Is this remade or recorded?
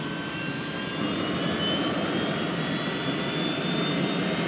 recorded